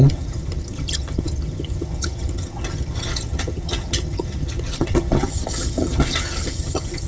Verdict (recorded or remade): remade